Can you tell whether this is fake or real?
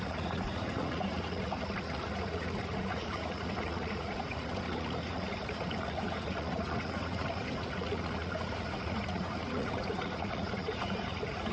fake